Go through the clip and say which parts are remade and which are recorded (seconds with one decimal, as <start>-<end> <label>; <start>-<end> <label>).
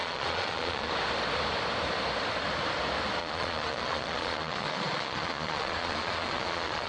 0.0-0.9 remade; 0.9-3.2 recorded; 3.2-6.9 remade